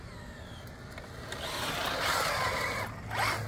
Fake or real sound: real